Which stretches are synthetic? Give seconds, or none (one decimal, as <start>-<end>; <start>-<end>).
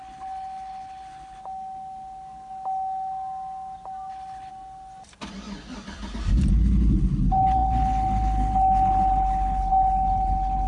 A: 0.0-1.4; 4.1-4.5; 6.5-10.7